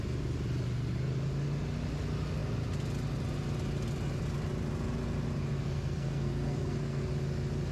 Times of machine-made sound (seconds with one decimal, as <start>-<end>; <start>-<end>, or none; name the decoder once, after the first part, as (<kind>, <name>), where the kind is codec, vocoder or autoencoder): 5.5-7.1 (codec, SNAC)